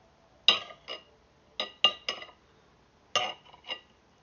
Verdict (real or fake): real